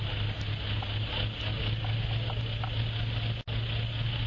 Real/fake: real